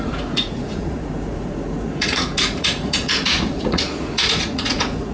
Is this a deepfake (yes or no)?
yes